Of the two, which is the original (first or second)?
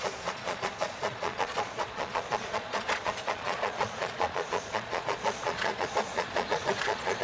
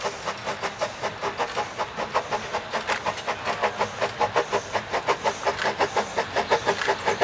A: second